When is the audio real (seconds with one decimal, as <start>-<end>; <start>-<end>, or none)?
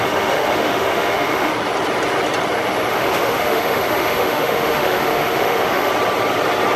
1.5-2.9; 5.9-6.8